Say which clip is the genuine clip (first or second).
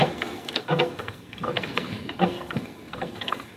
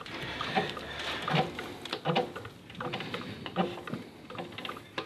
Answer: second